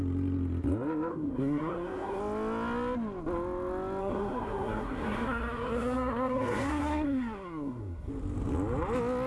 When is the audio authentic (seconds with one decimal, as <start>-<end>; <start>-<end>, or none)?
0.0-1.1; 2.2-4.0; 8.1-9.3